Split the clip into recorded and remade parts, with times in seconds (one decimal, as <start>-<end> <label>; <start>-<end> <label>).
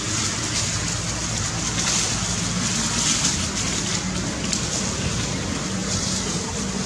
0.0-1.2 recorded; 1.2-3.9 remade; 3.9-5.8 recorded; 5.8-6.5 remade; 6.5-6.9 recorded